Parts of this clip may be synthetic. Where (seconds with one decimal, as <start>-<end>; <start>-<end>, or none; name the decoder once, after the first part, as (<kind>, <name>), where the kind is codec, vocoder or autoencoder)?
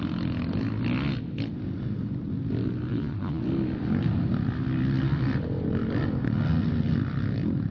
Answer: 2.9-3.4 (vocoder, Vocos)